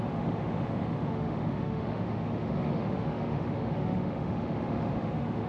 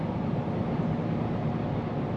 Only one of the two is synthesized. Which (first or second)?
first